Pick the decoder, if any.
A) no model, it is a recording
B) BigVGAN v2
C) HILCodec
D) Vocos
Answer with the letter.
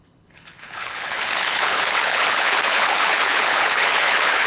C